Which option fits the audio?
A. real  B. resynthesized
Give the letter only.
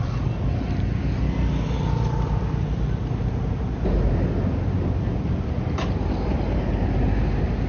A